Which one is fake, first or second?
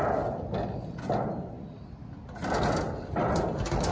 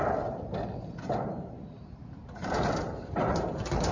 second